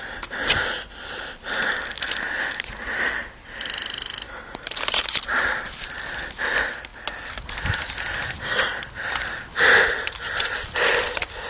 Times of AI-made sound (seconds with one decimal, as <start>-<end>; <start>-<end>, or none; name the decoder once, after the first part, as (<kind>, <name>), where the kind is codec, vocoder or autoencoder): none